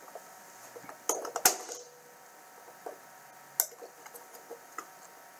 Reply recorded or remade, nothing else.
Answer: recorded